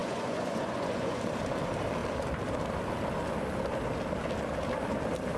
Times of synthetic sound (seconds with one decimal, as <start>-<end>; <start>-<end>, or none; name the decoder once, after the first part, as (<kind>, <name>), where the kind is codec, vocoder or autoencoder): 0.0-1.2 (vocoder, Vocos)